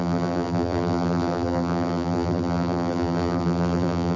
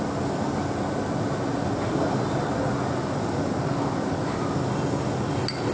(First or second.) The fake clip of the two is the first